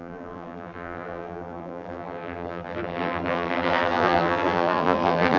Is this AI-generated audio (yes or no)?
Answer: yes